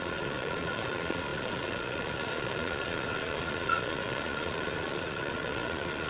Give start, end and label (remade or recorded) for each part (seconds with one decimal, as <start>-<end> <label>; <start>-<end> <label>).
0.0-6.1 remade